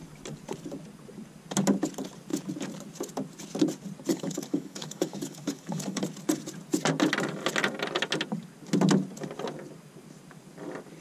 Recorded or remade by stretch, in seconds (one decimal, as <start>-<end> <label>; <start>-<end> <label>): 0.0-4.1 recorded; 4.1-6.0 remade; 6.0-11.0 recorded